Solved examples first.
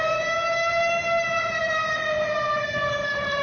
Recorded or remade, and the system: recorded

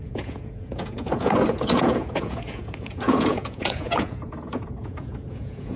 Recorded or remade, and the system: remade, vocoder, Vocos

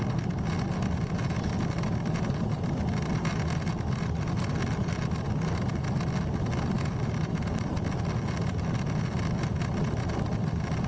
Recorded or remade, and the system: recorded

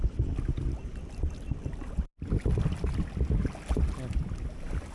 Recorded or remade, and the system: recorded